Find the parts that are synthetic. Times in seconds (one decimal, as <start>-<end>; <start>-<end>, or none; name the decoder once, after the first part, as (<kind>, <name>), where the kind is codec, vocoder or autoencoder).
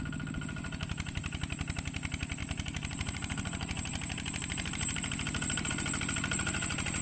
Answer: 2.4-5.7 (vocoder, BigVGAN v2)